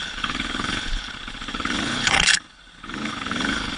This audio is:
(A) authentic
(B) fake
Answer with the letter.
B